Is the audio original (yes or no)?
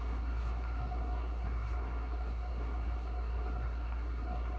no